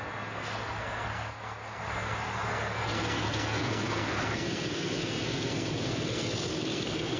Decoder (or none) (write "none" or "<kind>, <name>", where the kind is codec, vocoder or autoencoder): codec, SNAC